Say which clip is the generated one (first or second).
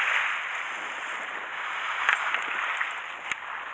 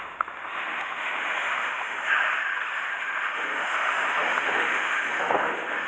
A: second